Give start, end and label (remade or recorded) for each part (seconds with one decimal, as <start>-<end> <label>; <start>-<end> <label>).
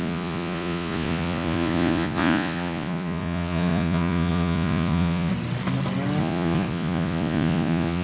0.0-5.3 remade; 5.3-6.2 recorded; 6.2-8.0 remade